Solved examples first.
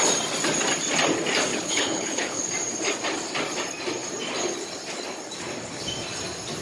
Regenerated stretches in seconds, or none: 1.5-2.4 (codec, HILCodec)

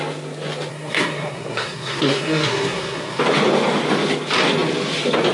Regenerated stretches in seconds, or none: 0.7-3.2 (codec, SNAC)

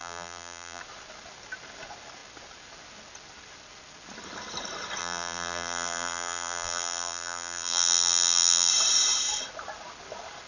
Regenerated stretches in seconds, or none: 0.0-0.8 (vocoder, BigVGAN v2); 5.0-8.7

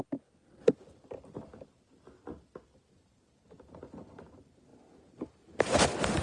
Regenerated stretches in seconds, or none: none

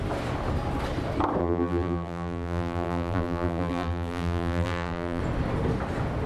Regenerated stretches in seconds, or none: 1.4-5.2 (vocoder, BigVGAN v2)

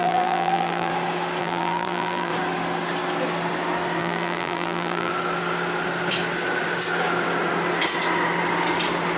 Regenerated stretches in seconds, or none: 0.0-0.9 (vocoder, BigVGAN v2); 1.4-2.3; 4.0-5.1

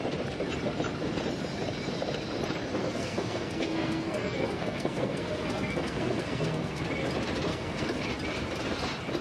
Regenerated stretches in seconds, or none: 2.8-6.8 (codec, SNAC); 7.5-8.0

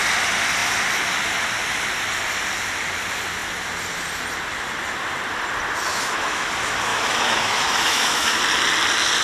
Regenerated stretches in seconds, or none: 5.9-6.5 (autoencoder, DAC-VAE); 6.9-8.4